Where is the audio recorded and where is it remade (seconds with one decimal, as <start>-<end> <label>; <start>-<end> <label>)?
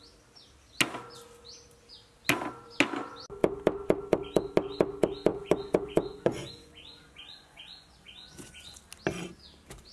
0.0-5.3 recorded; 5.3-8.8 remade; 8.8-9.9 recorded